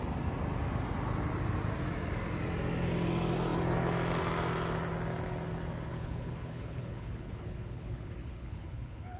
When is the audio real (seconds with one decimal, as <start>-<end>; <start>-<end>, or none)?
0.0-5.9